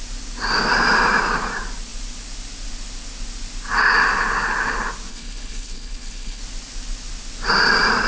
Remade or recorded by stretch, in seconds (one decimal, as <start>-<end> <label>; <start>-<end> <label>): 0.0-5.1 recorded; 5.1-6.4 remade; 6.4-8.1 recorded